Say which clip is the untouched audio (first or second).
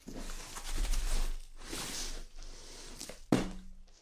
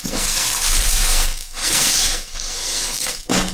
first